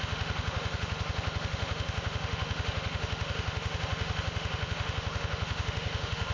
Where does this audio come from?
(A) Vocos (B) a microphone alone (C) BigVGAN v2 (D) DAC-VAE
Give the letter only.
D